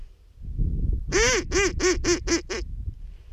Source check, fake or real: real